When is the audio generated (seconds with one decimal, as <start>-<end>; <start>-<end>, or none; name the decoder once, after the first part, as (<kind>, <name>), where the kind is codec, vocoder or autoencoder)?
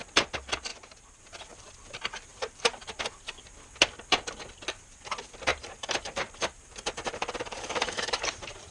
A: 0.7-1.2 (vocoder, BigVGAN v2); 2.3-2.9; 5.5-8.7